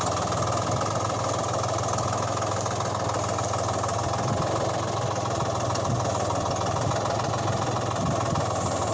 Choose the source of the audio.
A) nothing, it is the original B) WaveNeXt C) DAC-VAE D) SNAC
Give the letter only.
A